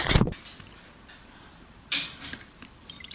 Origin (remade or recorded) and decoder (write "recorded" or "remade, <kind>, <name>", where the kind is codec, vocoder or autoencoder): remade, vocoder, BigVGAN v2